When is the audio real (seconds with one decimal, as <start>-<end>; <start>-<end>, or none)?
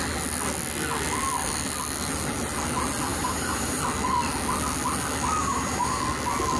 0.0-3.1; 3.8-5.4; 6.0-6.6